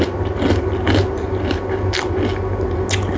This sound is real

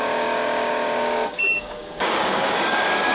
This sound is fake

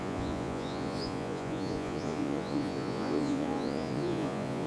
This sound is fake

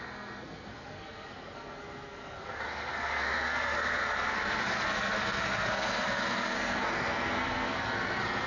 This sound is fake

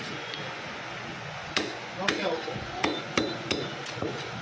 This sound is fake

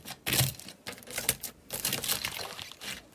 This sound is real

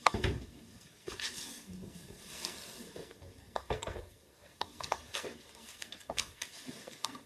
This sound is fake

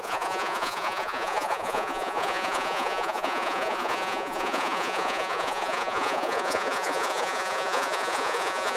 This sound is fake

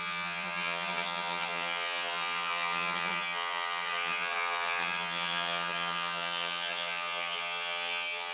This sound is fake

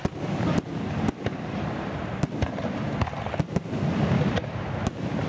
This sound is real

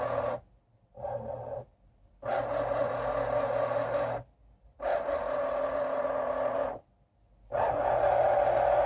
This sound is real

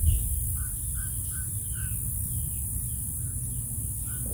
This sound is real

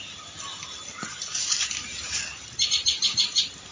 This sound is fake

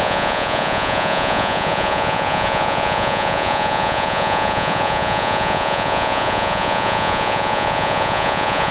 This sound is fake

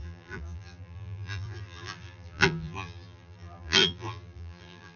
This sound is fake